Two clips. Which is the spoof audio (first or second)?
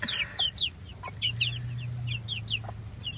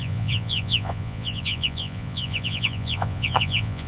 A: second